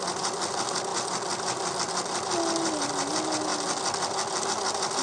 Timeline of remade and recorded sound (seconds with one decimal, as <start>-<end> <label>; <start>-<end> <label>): 0.0-5.0 recorded